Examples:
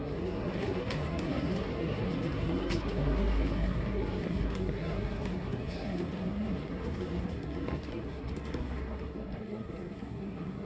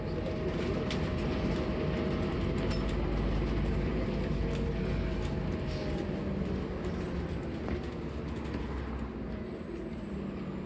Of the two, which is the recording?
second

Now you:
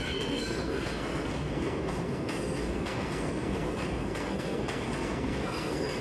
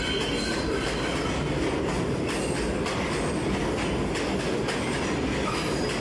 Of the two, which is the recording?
second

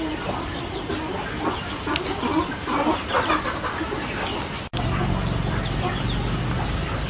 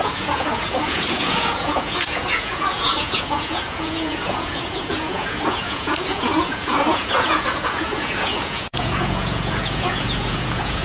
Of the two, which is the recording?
first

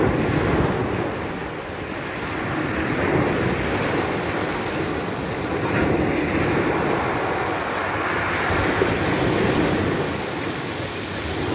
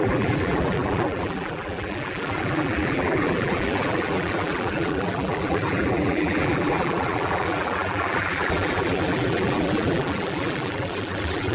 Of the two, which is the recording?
first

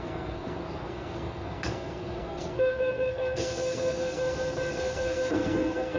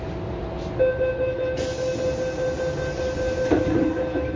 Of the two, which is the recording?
second